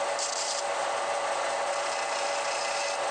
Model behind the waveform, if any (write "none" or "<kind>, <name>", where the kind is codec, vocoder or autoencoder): none